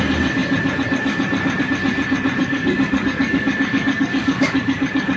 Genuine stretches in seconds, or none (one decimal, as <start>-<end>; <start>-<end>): 0.0-2.4